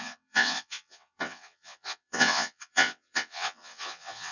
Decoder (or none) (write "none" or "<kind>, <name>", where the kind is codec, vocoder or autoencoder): vocoder, WaveNeXt